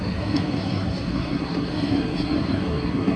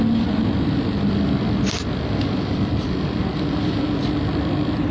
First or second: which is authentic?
second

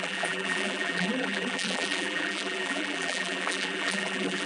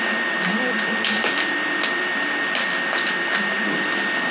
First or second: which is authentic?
second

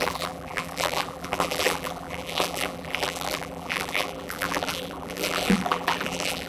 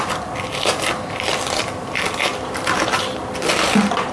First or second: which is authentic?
second